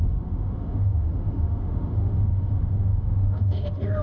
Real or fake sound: fake